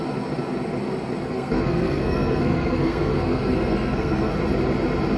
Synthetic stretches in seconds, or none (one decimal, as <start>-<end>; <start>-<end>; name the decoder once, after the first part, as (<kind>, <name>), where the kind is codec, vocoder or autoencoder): 1.2-4.3 (codec, SNAC)